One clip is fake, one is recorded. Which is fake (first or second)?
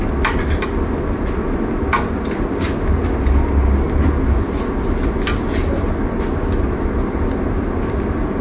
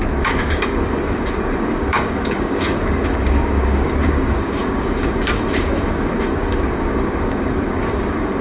second